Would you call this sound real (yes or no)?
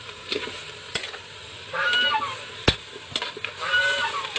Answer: no